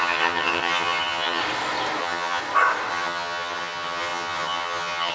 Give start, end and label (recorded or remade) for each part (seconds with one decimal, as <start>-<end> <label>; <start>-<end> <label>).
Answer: 0.0-1.4 remade; 1.4-2.0 recorded; 2.0-2.4 remade; 2.4-2.9 recorded; 2.9-5.1 remade